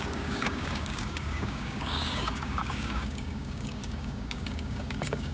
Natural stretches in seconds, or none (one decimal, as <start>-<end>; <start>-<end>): none